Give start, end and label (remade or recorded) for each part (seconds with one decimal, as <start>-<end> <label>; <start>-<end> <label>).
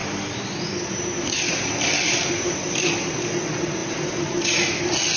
0.0-3.1 remade; 3.1-3.8 recorded; 3.8-4.8 remade; 4.8-5.2 recorded